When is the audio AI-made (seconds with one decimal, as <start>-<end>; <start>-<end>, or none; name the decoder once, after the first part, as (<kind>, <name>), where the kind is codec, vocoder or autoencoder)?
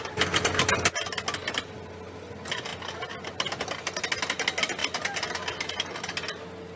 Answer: none